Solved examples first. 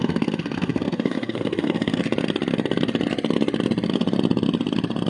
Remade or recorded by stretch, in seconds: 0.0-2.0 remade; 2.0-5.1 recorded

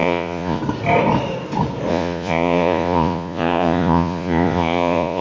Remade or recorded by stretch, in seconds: 0.0-0.6 remade; 0.6-1.9 recorded; 1.9-5.2 remade

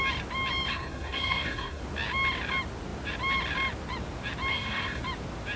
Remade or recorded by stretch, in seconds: 0.0-0.7 recorded; 0.7-1.8 remade; 1.8-4.5 recorded; 4.5-5.0 remade; 5.0-5.6 recorded

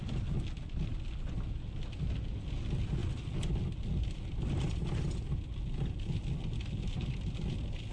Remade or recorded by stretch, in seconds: 0.0-7.9 recorded

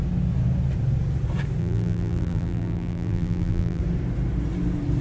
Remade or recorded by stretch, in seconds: 0.0-1.6 recorded; 1.6-3.8 remade; 3.8-5.0 recorded

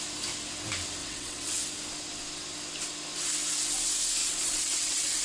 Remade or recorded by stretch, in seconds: 0.0-1.0 recorded; 1.0-1.6 remade; 1.6-4.2 recorded; 4.2-5.2 remade

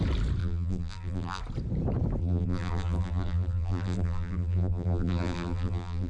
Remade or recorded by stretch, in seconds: 0.0-0.4 recorded; 0.4-1.4 remade; 1.4-2.2 recorded; 2.2-6.1 remade

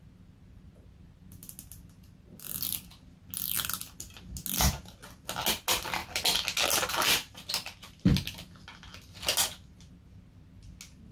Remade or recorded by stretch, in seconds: 0.0-11.1 recorded